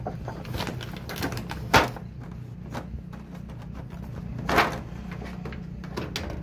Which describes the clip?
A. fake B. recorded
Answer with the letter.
B